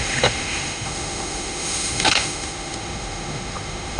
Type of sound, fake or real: fake